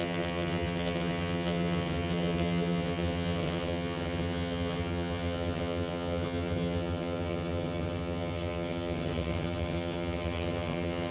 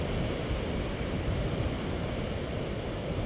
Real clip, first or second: second